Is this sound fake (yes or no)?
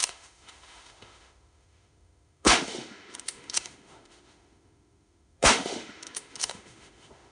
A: yes